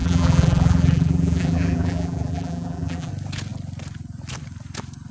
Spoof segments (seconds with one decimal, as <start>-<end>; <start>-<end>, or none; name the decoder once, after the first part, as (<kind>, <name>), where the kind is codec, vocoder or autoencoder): 0.0-3.1 (vocoder, BigVGAN v2)